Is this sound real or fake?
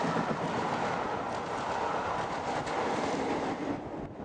real